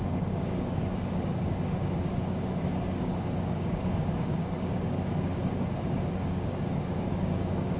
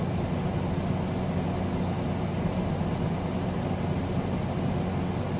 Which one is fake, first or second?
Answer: first